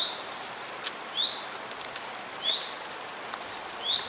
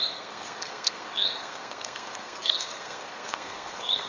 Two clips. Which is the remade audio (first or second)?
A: second